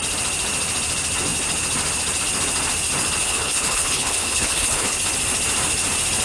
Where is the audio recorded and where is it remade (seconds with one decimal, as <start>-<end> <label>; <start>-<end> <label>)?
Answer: 0.0-3.2 recorded; 3.2-5.0 remade; 5.0-6.2 recorded